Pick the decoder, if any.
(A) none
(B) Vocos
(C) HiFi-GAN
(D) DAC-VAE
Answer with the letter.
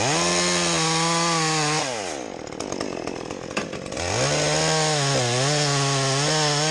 A